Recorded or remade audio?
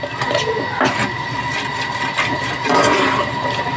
recorded